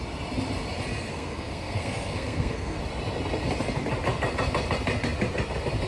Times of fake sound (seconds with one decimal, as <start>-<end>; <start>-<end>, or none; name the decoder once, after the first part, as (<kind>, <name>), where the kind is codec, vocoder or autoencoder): 1.1-2.8 (codec, SNAC)